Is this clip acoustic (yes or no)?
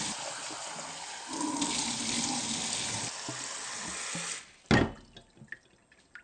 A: yes